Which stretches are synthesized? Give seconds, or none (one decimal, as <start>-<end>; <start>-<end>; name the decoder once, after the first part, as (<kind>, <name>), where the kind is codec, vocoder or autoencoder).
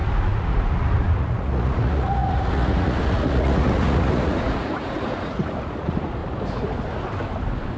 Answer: 0.0-6.2 (vocoder, Vocos)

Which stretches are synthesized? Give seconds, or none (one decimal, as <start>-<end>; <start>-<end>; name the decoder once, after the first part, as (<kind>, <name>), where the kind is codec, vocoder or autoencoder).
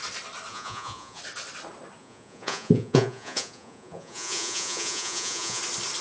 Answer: 0.5-1.2 (vocoder, Vocos); 2.0-5.6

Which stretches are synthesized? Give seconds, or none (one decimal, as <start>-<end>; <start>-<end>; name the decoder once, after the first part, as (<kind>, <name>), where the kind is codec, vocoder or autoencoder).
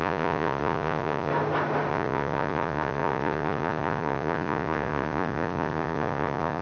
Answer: 0.0-1.3 (vocoder, Vocos); 1.9-6.6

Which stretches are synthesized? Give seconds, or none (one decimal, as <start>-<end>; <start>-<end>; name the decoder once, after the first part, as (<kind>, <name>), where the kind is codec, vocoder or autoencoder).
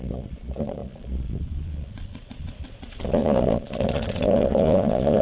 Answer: 0.0-5.2 (vocoder, Vocos)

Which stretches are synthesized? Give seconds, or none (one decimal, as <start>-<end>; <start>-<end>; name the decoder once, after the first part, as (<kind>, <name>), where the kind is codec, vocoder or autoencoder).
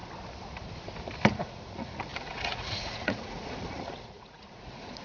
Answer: 1.4-5.0 (vocoder, Vocos)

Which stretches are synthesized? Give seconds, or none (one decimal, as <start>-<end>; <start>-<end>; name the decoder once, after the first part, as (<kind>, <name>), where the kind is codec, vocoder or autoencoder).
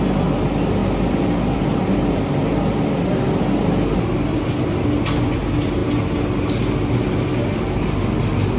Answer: none